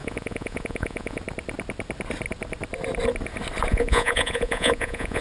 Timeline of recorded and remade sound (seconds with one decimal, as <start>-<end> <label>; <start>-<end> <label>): 0.0-1.2 remade; 1.2-3.7 recorded; 3.7-5.2 remade